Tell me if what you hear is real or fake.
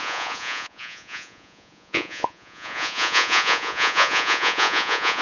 fake